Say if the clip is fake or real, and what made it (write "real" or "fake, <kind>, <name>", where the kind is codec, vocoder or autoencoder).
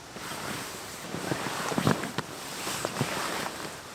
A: fake, vocoder, BigVGAN v2